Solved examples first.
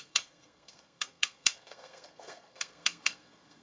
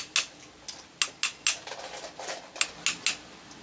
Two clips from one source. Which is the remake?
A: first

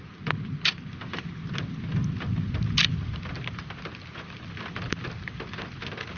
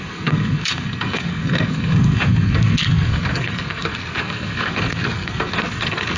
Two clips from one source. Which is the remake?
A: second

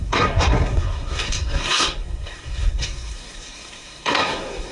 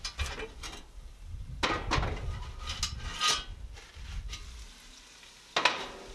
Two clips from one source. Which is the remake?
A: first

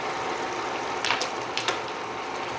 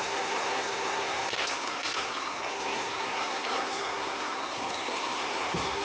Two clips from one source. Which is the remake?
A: second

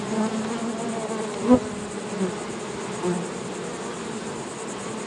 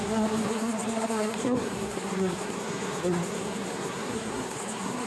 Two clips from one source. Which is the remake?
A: second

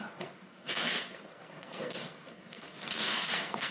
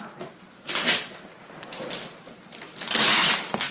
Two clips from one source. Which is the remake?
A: first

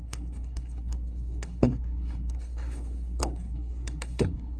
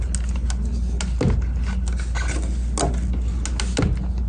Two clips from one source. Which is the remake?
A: first